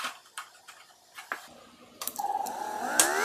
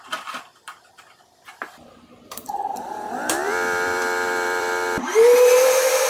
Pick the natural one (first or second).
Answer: first